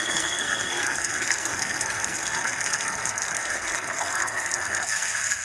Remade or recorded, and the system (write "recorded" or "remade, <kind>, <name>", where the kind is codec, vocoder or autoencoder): remade, codec, SNAC